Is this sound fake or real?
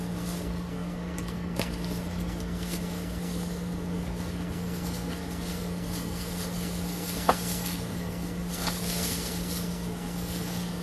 fake